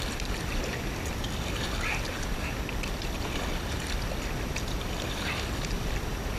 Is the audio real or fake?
real